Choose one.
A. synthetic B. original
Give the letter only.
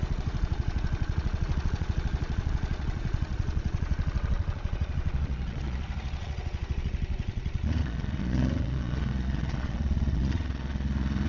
A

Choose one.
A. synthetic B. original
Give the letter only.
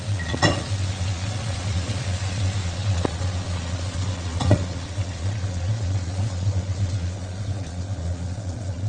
A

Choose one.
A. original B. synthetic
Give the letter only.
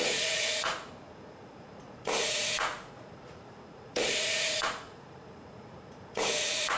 B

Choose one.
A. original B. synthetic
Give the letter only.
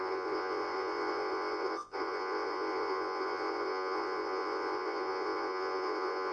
B